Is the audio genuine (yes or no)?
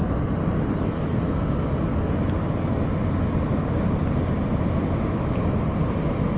yes